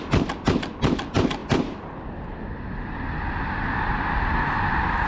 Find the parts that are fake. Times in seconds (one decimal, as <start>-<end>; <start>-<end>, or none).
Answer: none